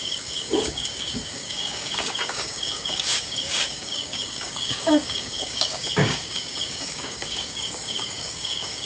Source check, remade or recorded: remade